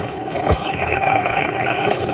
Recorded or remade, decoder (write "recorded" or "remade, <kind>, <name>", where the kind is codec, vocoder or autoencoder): remade, codec, HILCodec